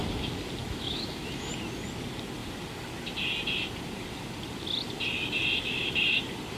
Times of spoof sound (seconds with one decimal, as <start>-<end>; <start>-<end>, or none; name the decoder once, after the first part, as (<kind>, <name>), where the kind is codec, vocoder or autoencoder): 0.6-1.5 (autoencoder, DAC-VAE)